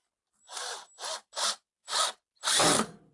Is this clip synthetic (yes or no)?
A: no